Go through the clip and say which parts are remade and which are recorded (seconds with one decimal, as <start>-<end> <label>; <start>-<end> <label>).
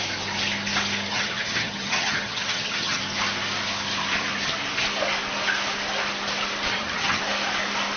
0.0-1.1 recorded; 1.1-3.0 remade; 3.0-6.7 recorded; 6.7-7.2 remade; 7.2-8.0 recorded